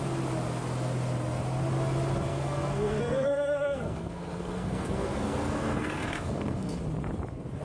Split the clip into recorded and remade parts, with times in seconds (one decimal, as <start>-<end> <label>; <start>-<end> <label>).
0.0-2.3 recorded; 2.3-6.8 remade; 6.8-7.6 recorded